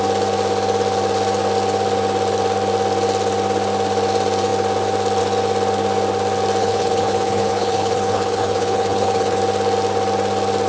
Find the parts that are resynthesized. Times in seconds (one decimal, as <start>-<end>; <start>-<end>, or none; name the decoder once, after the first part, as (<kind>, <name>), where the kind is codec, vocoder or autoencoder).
6.6-9.4 (codec, HILCodec)